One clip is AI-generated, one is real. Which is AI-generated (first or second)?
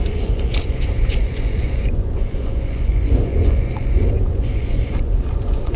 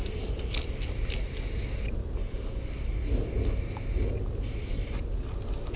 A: first